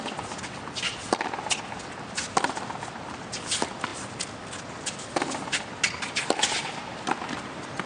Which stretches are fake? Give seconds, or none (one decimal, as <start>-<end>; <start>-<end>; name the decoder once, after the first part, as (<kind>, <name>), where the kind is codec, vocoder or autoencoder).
none